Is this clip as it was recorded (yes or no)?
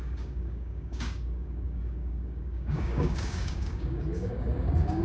no